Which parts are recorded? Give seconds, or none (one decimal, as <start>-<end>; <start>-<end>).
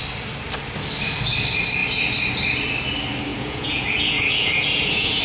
0.0-3.3